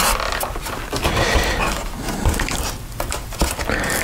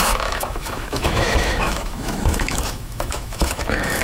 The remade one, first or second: second